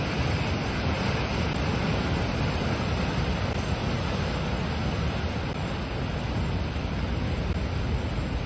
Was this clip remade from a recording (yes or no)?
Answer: no